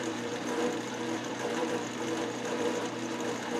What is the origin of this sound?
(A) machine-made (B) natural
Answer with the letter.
A